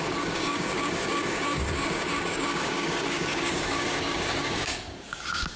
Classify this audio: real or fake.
fake